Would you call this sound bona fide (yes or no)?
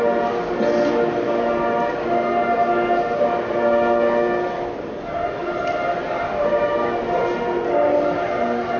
yes